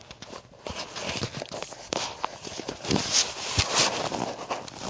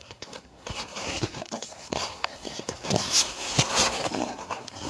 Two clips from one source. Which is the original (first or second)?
first